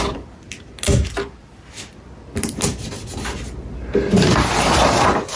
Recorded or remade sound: recorded